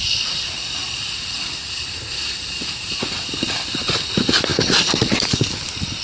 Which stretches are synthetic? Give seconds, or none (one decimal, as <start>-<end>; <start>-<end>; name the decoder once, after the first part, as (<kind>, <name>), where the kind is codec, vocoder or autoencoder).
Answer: none